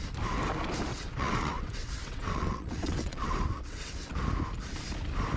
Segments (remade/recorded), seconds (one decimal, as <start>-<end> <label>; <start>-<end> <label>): 0.0-0.9 recorded; 0.9-4.1 remade; 4.1-5.4 recorded

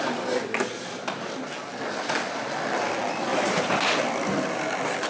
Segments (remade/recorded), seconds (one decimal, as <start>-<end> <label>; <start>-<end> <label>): 0.0-3.3 recorded; 3.3-3.9 remade; 3.9-5.1 recorded

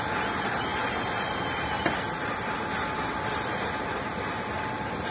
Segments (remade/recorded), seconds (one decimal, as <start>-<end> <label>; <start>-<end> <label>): 0.0-5.1 remade

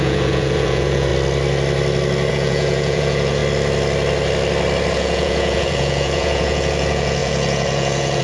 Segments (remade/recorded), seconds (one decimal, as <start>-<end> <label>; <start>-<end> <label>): 0.0-1.1 remade; 1.1-2.3 recorded; 2.3-3.4 remade; 3.4-4.9 recorded; 4.9-8.2 remade

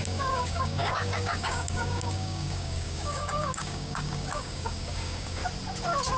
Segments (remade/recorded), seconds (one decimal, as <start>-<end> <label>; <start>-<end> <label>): 0.0-5.4 remade; 5.4-6.2 recorded

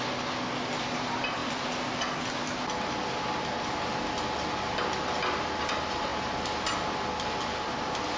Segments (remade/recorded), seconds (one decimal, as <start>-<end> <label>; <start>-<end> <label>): 0.0-8.2 recorded